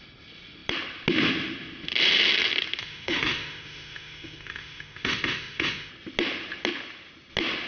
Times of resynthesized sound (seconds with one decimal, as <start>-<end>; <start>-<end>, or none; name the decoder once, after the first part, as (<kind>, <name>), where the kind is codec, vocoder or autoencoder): 2.8-5.9 (autoencoder, DAC-VAE)